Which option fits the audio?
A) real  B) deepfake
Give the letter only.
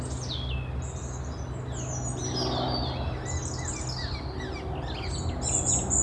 A